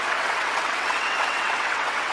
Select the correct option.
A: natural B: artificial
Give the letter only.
B